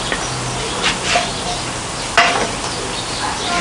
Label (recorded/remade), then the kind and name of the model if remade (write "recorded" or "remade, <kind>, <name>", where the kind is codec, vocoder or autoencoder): recorded